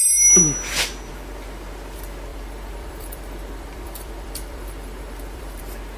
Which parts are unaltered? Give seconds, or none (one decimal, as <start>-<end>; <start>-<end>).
0.0-2.3; 5.6-6.0

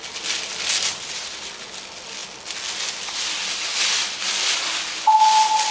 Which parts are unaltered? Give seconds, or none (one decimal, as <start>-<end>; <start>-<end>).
0.0-0.9; 1.5-5.7

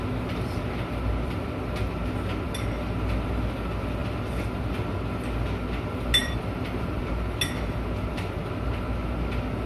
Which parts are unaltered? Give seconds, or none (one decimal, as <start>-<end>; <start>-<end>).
0.0-6.2; 7.0-9.7

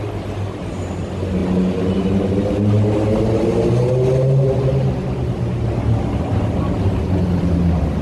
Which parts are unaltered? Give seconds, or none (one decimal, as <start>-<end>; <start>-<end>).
0.0-8.0

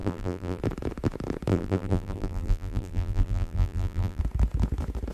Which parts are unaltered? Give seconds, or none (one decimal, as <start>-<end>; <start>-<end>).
0.6-1.5; 4.2-5.1

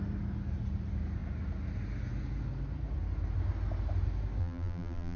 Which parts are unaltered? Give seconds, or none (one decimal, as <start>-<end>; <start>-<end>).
0.0-4.4

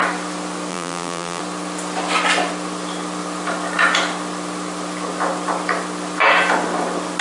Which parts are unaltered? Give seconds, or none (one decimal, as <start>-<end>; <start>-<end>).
0.0-0.7; 1.4-7.2

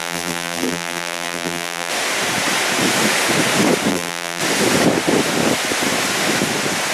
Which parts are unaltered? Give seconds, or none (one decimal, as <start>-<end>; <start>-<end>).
1.9-3.9; 4.4-6.9